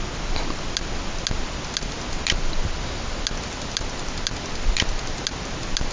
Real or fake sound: real